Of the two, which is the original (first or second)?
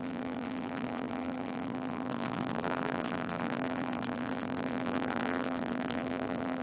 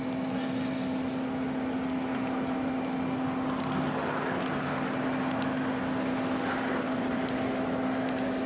second